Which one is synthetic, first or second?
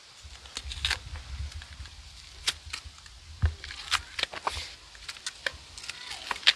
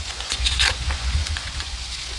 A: second